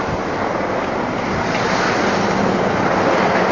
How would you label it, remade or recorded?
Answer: recorded